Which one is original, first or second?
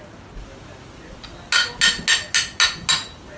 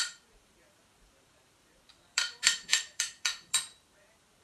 first